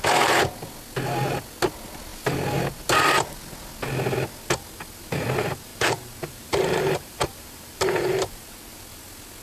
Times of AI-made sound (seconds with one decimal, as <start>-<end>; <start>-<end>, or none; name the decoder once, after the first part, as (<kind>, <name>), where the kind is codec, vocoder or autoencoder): 5.7-8.8 (vocoder, BigVGAN v2)